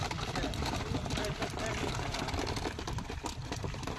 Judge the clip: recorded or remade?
remade